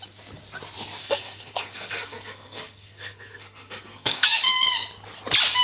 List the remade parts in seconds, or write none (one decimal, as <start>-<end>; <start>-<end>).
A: 1.0-4.4